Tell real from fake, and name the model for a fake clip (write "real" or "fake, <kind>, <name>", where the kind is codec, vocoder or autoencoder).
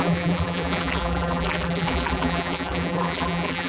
fake, vocoder, BigVGAN v2